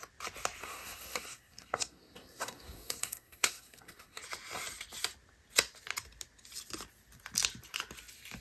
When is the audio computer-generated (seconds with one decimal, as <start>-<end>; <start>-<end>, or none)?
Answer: 0.6-4.2